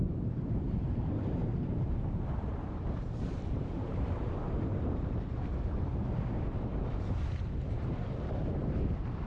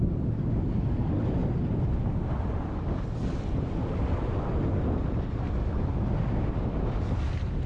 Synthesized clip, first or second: first